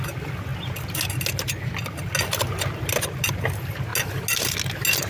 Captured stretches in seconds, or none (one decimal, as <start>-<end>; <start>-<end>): 0.0-5.1